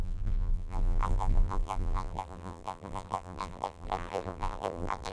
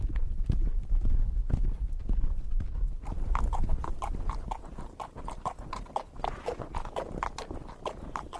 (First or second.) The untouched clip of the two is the second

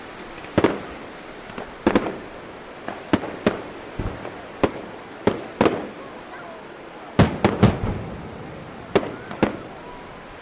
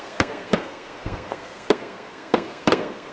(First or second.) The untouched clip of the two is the first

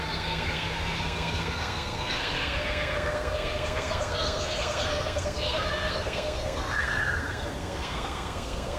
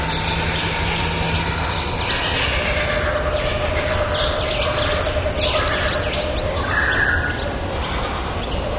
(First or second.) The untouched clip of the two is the second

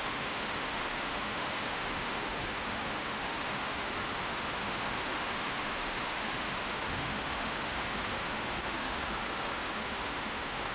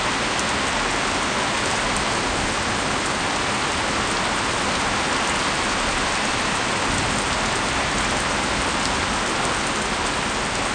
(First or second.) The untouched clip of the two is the second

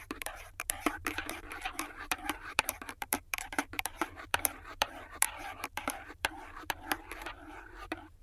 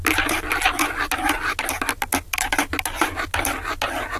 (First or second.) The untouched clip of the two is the second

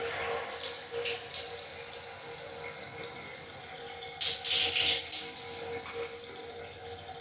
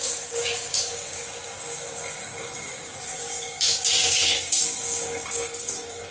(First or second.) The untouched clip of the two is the first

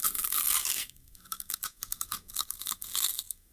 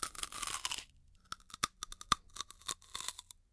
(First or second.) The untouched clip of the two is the second